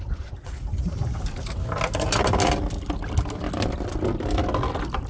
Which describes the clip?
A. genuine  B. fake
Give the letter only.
A